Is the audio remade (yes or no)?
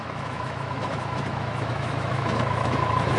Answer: yes